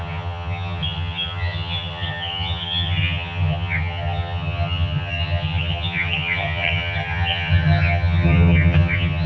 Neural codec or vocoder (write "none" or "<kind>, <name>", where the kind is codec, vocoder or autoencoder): vocoder, HiFi-GAN